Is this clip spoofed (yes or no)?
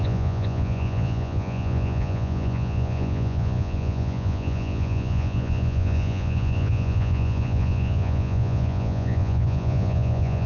yes